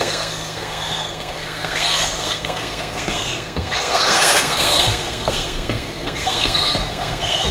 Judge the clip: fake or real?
fake